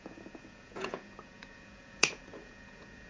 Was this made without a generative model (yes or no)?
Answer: no